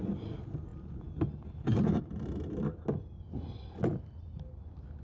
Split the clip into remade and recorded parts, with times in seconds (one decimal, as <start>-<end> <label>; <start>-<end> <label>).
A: 0.0-5.0 recorded